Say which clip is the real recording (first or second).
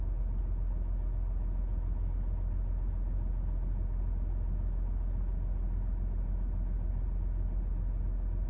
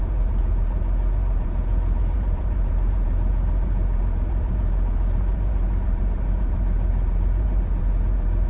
first